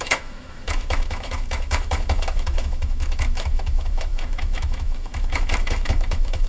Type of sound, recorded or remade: remade